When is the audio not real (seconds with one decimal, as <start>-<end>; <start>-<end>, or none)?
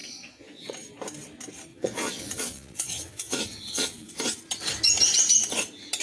0.0-0.7; 1.7-4.1